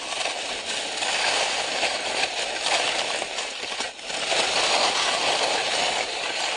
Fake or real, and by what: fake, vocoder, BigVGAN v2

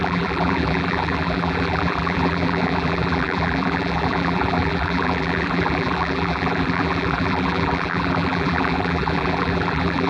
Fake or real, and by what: fake, vocoder, BigVGAN v2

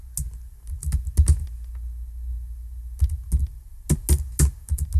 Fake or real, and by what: real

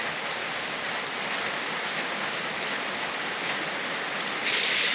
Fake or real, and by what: real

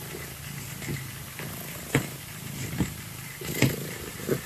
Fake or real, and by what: fake, vocoder, BigVGAN v2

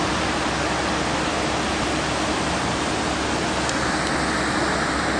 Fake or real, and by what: real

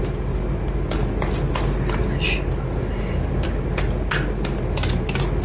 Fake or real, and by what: real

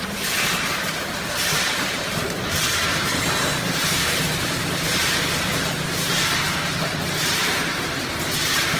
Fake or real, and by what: fake, vocoder, BigVGAN v2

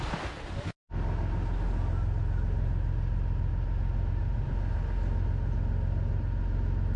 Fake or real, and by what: real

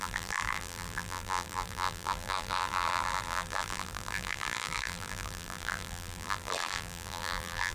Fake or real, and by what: fake, vocoder, BigVGAN v2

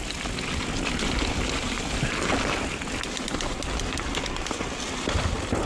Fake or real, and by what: real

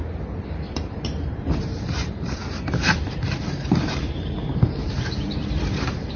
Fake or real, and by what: fake, vocoder, BigVGAN v2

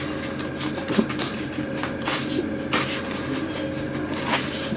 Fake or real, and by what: real